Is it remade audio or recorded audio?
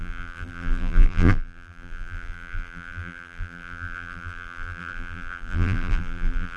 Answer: remade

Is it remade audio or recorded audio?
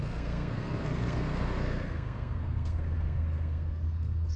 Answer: remade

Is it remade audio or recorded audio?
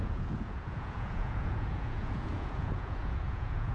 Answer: remade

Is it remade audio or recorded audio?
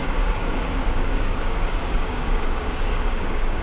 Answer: remade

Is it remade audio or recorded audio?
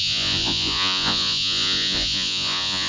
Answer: remade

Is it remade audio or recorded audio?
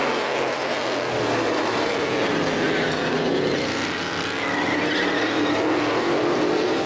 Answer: recorded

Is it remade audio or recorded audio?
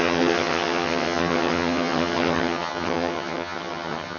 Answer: remade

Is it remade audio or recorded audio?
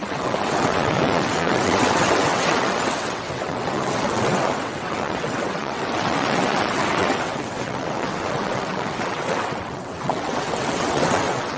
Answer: remade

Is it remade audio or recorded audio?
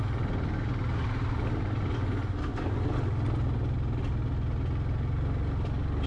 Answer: recorded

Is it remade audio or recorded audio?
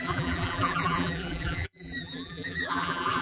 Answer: remade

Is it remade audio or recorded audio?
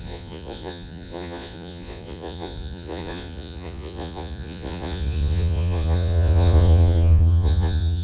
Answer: remade